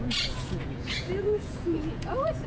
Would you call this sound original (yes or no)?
no